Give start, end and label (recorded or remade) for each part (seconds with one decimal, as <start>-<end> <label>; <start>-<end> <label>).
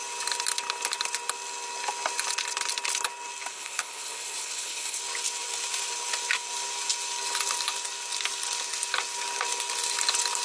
0.0-3.5 recorded; 3.5-5.0 remade; 5.0-10.4 recorded